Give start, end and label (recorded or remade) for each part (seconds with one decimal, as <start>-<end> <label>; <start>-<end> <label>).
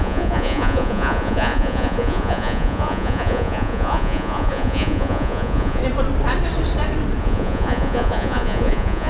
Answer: 0.0-5.8 remade; 5.8-7.2 recorded; 7.2-9.1 remade